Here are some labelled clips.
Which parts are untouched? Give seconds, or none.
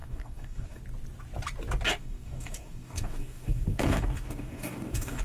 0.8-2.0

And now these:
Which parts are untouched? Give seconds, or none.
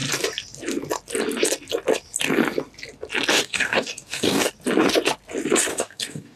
0.0-3.3; 4.5-5.7